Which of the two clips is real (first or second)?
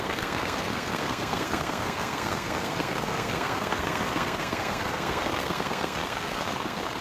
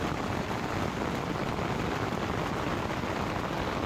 second